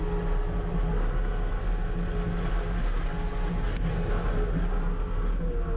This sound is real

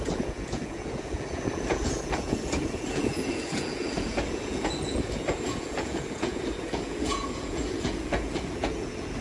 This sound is fake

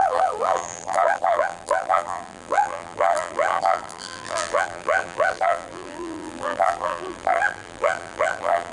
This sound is fake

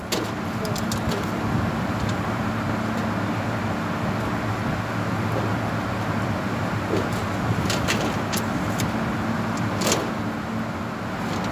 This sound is real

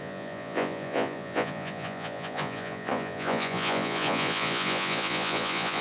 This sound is fake